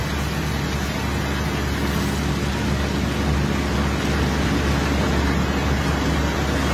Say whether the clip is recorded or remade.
recorded